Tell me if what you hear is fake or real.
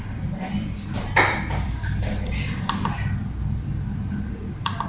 fake